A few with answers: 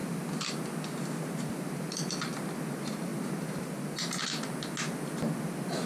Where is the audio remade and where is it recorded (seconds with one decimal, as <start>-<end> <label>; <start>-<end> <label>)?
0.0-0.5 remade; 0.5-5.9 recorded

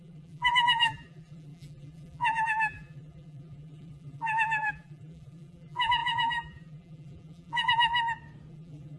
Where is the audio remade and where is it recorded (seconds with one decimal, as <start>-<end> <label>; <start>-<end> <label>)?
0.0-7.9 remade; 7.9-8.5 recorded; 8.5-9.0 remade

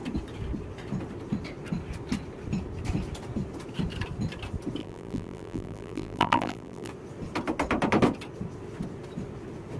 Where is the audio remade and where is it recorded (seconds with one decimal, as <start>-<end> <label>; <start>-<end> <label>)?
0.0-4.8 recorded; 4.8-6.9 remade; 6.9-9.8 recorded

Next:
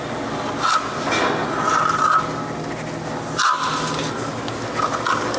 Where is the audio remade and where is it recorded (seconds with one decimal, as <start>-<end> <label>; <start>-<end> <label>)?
0.0-1.4 recorded; 1.4-2.0 remade; 2.0-5.4 recorded

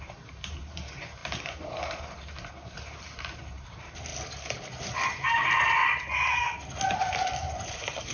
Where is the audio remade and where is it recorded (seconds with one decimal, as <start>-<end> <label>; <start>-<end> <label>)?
0.0-5.8 remade; 5.8-6.9 recorded; 6.9-8.1 remade

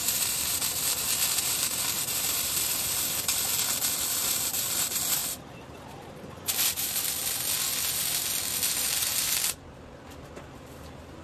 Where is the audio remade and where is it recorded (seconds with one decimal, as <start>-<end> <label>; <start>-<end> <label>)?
0.0-7.2 remade; 7.2-8.7 recorded; 8.7-11.2 remade

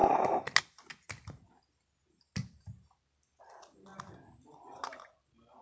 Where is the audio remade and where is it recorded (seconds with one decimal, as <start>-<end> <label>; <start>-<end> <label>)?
0.0-5.6 recorded

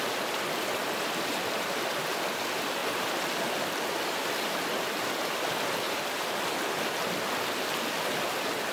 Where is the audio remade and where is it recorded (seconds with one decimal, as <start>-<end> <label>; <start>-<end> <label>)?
0.0-2.8 recorded; 2.8-6.0 remade; 6.0-8.7 recorded